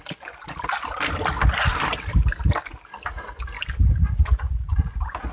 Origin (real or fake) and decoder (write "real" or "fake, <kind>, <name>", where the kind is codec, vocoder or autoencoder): real